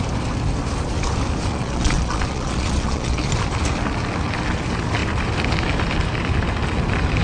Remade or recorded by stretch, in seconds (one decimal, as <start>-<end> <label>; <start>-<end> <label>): 0.0-1.5 recorded; 1.5-3.3 remade; 3.3-7.2 recorded